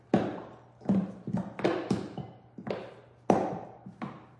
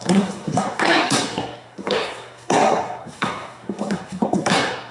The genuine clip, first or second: first